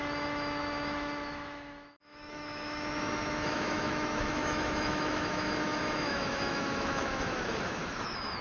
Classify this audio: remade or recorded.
remade